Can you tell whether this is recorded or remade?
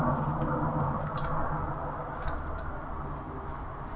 recorded